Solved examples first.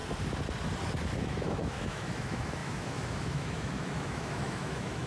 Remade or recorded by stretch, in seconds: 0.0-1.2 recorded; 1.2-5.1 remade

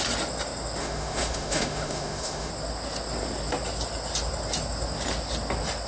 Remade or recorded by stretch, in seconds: 0.0-0.8 recorded; 0.8-2.5 remade; 2.5-5.9 recorded

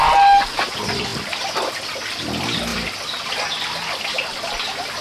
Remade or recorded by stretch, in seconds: 0.0-5.0 recorded